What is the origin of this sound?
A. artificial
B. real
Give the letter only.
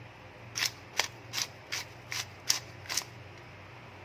B